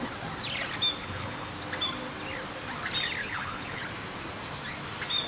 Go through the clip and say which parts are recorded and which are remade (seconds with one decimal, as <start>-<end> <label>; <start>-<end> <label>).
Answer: 0.0-1.0 recorded; 1.0-1.5 remade; 1.5-3.2 recorded; 3.2-3.8 remade; 3.8-5.3 recorded